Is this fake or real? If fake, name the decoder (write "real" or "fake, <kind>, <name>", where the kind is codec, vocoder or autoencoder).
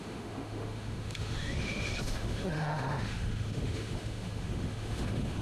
fake, autoencoder, DAC-VAE